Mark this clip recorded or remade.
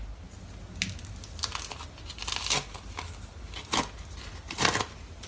recorded